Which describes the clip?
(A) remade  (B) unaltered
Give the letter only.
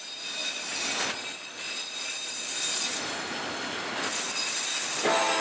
B